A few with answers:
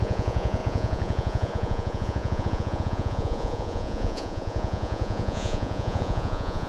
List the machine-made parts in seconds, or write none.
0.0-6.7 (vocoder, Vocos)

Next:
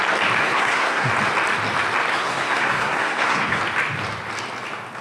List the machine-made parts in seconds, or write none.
0.4-1.1 (codec, SNAC); 2.1-3.6

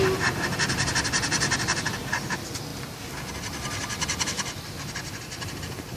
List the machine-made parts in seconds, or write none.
none

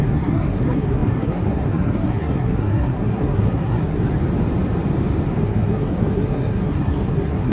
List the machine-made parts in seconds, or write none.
0.0-4.0 (codec, SNAC); 5.4-7.5

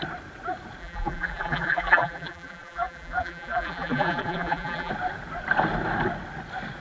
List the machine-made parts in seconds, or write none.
0.8-4.9 (vocoder, BigVGAN v2)

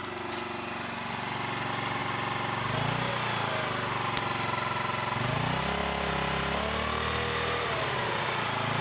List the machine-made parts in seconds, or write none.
none